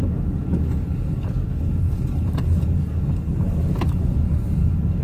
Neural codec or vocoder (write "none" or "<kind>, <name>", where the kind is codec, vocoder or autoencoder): codec, DAC